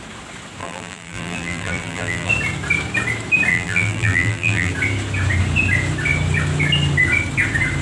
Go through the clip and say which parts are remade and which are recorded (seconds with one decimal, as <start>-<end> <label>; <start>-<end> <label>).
0.0-0.6 recorded; 0.6-2.3 remade; 2.3-3.5 recorded; 3.5-4.7 remade; 4.7-7.8 recorded